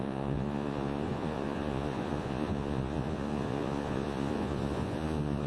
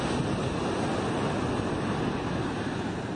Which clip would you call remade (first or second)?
first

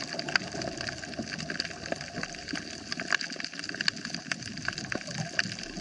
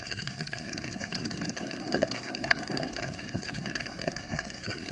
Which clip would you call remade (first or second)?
second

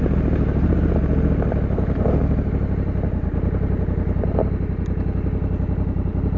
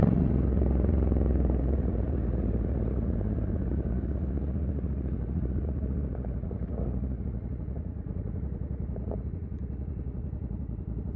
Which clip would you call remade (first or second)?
second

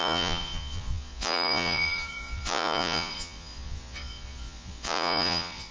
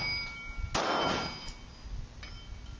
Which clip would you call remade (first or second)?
first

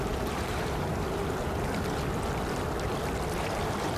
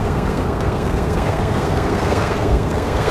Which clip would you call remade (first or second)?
second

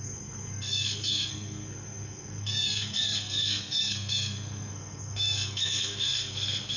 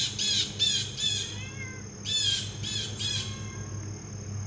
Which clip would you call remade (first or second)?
first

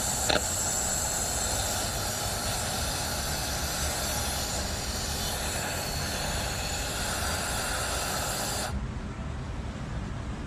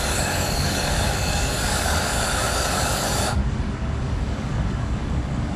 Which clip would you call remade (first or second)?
second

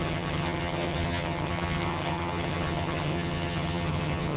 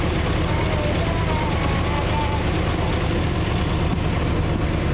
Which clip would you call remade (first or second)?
first